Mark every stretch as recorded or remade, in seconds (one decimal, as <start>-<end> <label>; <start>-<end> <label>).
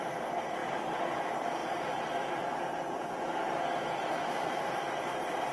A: 0.0-1.6 remade; 1.6-4.0 recorded; 4.0-5.5 remade